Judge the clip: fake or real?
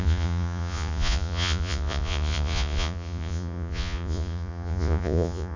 fake